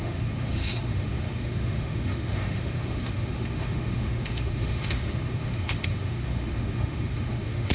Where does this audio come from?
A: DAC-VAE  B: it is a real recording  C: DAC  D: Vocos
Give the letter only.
A